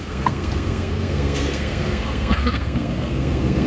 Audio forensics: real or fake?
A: fake